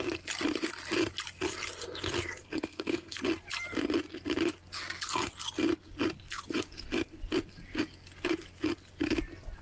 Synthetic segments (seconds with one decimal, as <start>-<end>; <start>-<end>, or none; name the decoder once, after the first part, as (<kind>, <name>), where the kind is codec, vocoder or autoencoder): 2.4-3.2 (codec, SNAC)